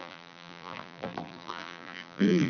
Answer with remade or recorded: remade